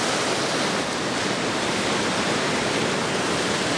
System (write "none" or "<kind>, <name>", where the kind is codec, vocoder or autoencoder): none